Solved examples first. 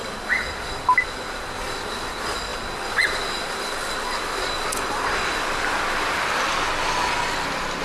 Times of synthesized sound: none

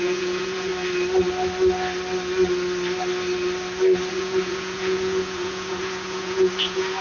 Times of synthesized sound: 0.0-0.7 (vocoder, Vocos); 4.1-7.0

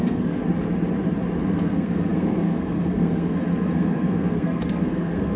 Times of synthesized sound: 0.0-0.4 (codec, SNAC); 1.5-5.4

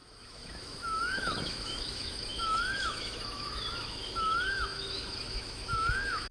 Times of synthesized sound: 0.0-6.3 (autoencoder, DAC-VAE)